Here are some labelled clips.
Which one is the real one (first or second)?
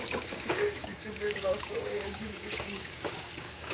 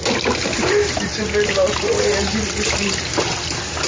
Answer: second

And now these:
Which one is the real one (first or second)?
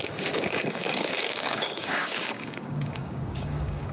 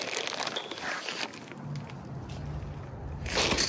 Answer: second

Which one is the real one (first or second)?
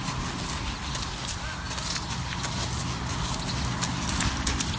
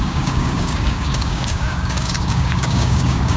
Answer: first